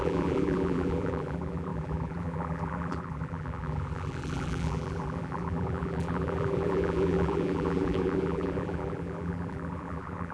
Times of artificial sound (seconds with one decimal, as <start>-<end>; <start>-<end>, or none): 0.0-10.3

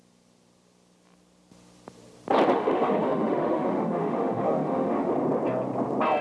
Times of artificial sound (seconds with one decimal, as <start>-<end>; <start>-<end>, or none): 2.5-5.1

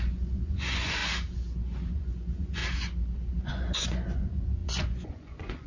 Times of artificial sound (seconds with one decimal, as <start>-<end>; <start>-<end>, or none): 0.0-1.0; 1.9-2.6; 3.4-5.7

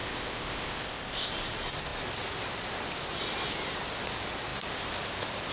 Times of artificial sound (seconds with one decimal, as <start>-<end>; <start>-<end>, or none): 0.0-1.3

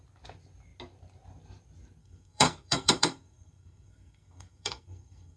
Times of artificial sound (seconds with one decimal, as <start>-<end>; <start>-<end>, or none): 2.0-5.4

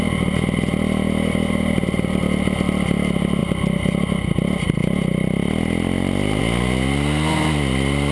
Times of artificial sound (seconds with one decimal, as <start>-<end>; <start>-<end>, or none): none

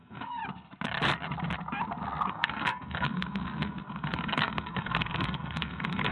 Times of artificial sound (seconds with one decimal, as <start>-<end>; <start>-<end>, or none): 0.0-0.4; 2.3-6.1

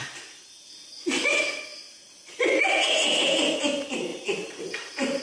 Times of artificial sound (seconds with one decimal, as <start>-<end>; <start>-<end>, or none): 4.1-4.6